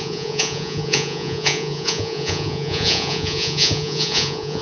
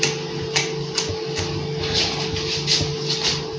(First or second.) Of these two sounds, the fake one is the first